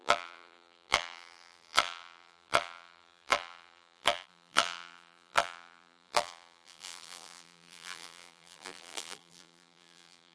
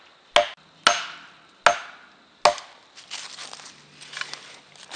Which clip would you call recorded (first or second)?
second